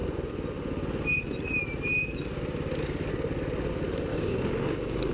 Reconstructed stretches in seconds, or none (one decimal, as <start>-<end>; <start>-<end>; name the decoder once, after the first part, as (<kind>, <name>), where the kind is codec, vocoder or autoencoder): 4.1-5.1 (codec, DAC)